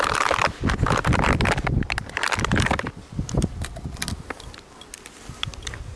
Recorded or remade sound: recorded